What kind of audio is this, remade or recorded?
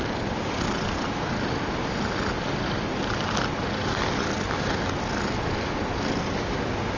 recorded